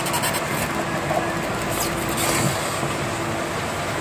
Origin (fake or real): real